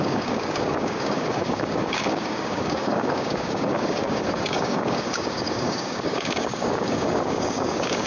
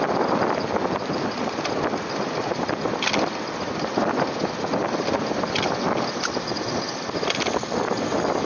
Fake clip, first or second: first